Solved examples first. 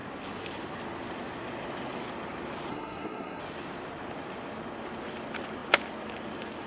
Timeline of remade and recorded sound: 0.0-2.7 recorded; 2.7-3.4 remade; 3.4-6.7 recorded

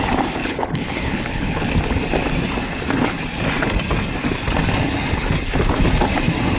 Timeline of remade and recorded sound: 0.0-0.4 recorded; 0.4-1.7 remade; 1.7-6.6 recorded